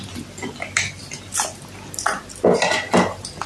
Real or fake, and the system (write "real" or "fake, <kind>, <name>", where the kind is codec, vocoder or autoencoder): real